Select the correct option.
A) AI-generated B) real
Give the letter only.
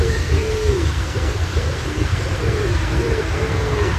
A